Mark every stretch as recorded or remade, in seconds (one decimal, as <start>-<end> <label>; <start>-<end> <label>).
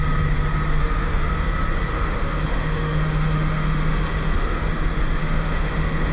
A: 0.0-0.8 recorded; 0.8-1.3 remade; 1.3-1.9 recorded; 1.9-4.7 remade; 4.7-5.2 recorded; 5.2-6.1 remade